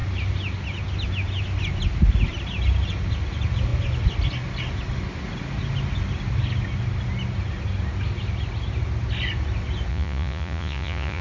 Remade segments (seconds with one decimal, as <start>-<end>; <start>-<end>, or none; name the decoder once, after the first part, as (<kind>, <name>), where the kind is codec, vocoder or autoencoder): 9.9-11.2 (vocoder, Vocos)